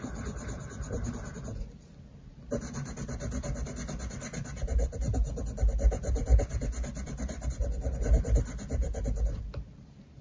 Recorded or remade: recorded